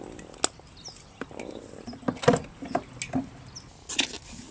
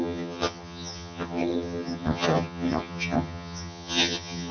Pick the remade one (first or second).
second